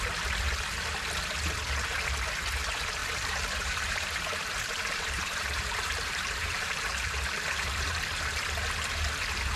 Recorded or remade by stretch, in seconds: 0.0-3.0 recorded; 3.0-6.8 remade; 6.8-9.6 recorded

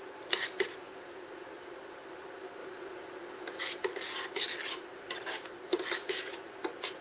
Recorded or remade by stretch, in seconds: 0.0-7.0 recorded

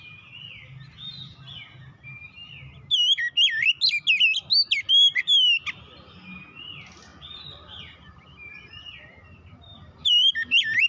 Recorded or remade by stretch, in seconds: 0.0-7.1 recorded; 7.1-10.9 remade